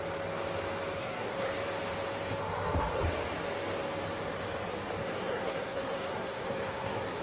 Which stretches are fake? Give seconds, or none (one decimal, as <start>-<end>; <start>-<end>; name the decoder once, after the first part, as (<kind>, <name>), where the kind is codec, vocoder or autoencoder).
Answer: 1.0-1.5 (codec, SNAC); 5.0-7.2